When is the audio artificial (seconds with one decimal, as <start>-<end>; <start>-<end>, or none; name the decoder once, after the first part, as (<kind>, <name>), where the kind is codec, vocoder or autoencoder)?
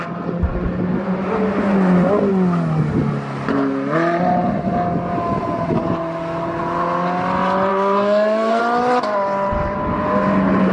7.7-8.6 (codec, SNAC)